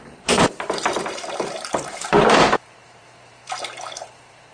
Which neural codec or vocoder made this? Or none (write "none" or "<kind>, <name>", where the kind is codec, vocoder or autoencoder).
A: vocoder, BigVGAN v2